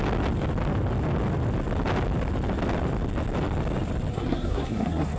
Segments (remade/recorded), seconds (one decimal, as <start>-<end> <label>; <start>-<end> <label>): 0.0-4.1 recorded; 4.1-5.2 remade